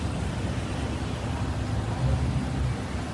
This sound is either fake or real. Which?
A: real